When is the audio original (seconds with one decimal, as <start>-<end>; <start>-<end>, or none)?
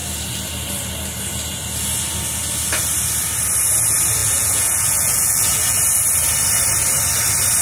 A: 0.0-4.2; 5.8-7.6